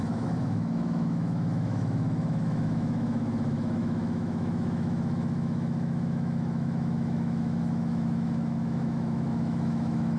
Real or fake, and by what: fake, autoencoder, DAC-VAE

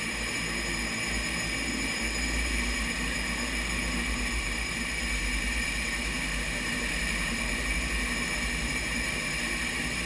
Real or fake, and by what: fake, vocoder, BigVGAN v2